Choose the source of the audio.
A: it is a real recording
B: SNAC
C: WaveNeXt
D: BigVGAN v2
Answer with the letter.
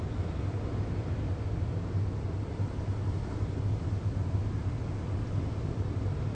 A